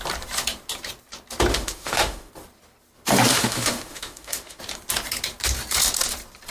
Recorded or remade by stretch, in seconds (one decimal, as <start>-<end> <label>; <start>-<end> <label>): 0.0-1.5 recorded; 1.5-2.3 remade; 2.3-3.3 recorded; 3.3-4.6 remade; 4.6-6.5 recorded